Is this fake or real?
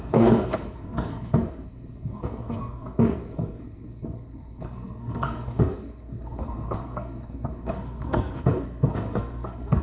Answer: fake